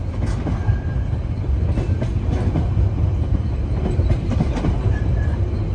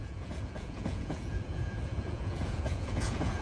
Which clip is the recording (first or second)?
first